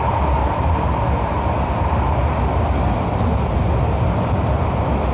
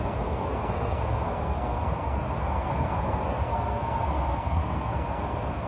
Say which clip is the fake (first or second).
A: second